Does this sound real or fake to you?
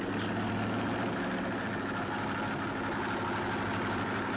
real